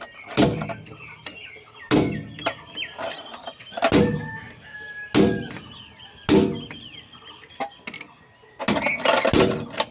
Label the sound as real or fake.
real